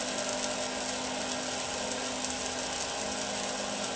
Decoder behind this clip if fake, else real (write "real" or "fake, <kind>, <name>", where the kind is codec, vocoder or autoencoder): real